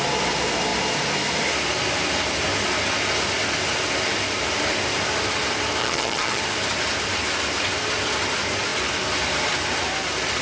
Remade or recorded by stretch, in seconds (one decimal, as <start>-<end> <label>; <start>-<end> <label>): 0.0-5.8 recorded; 5.8-6.4 remade; 6.4-10.4 recorded